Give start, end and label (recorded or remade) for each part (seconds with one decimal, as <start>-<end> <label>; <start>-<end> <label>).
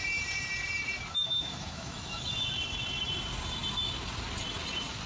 0.0-1.1 recorded; 1.1-2.3 remade; 2.3-5.1 recorded